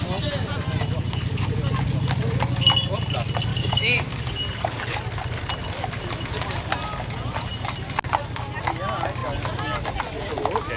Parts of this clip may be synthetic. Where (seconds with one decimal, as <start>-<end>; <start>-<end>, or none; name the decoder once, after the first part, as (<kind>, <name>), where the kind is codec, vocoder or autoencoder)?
3.5-5.0 (codec, DAC)